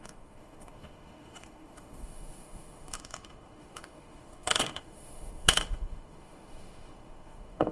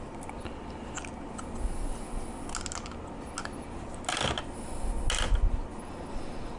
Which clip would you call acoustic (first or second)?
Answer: second